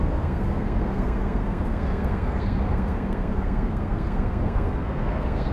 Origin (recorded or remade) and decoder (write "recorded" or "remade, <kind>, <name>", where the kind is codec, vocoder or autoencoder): remade, codec, SNAC